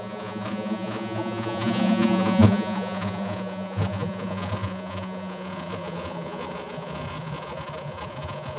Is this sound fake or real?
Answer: fake